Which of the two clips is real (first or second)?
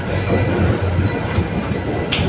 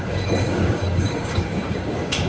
first